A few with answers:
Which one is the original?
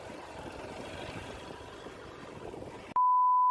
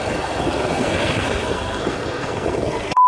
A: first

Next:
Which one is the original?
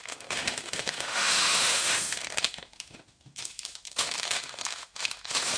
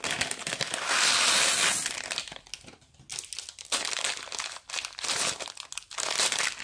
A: second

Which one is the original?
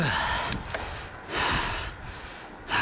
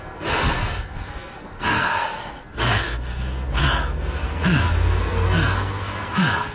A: first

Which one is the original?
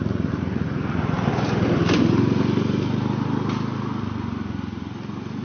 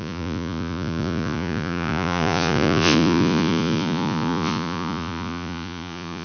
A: first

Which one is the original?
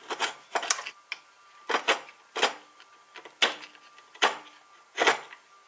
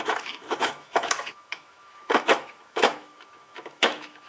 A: first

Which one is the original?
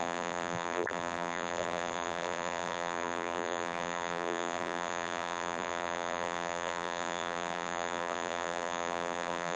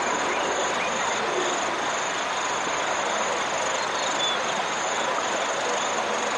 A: second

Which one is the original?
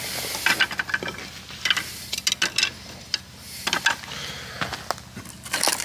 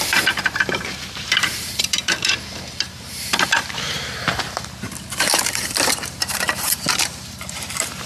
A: first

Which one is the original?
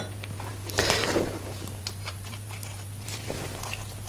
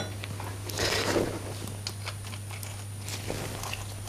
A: second